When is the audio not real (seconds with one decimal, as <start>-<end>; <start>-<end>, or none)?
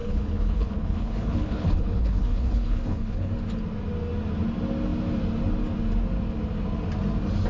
0.0-3.3